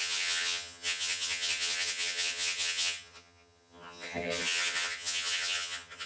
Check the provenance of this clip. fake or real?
fake